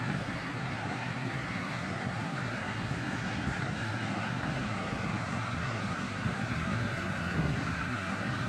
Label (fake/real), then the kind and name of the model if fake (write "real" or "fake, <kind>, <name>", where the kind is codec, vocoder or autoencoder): fake, codec, SNAC